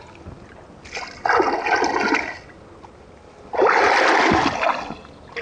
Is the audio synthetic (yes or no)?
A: no